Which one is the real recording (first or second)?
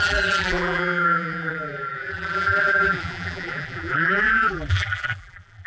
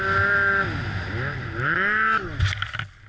second